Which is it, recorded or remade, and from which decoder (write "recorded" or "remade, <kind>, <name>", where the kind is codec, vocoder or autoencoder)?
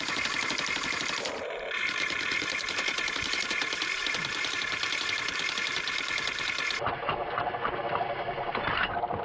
remade, vocoder, BigVGAN v2